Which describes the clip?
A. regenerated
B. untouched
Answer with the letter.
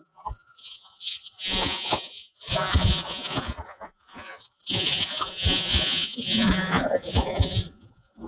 A